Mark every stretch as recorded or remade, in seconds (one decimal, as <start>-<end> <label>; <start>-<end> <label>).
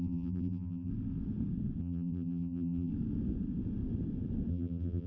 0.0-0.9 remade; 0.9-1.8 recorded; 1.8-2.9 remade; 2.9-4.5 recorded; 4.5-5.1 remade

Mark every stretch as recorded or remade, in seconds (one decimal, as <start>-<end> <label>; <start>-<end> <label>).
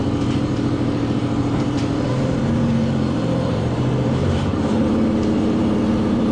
0.0-6.3 remade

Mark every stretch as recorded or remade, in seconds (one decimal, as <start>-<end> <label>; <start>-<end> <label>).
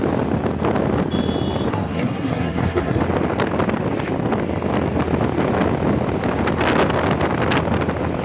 0.0-1.7 recorded; 1.7-3.0 remade; 3.0-8.2 recorded